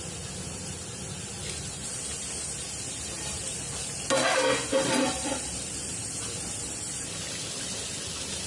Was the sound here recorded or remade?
recorded